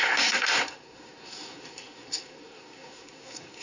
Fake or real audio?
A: fake